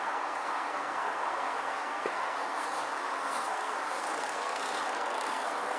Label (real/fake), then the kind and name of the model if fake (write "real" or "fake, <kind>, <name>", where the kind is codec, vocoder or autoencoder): fake, codec, SNAC